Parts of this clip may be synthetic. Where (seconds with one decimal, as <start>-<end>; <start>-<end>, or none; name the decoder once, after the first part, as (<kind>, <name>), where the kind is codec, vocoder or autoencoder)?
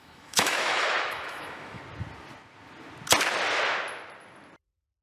0.0-1.8 (autoencoder, DAC-VAE)